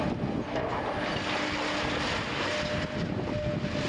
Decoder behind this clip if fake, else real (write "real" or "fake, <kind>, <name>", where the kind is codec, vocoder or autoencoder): real